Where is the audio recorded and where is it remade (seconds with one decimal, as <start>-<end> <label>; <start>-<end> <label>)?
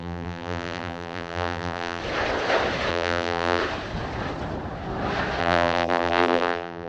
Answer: 0.0-2.0 remade; 2.0-2.9 recorded; 2.9-3.6 remade; 3.6-5.4 recorded; 5.4-6.9 remade